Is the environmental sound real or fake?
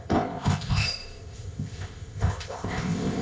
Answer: fake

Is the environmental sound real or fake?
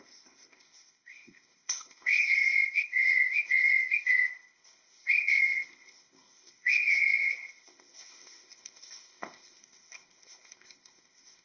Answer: fake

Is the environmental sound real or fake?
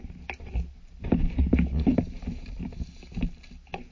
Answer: real